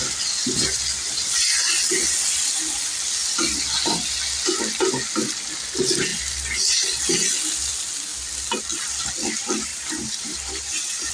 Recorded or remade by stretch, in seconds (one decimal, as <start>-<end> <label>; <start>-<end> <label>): 0.0-9.7 recorded; 9.7-11.1 remade